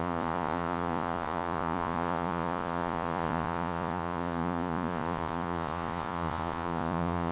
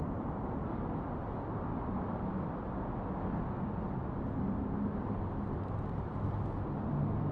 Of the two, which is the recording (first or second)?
second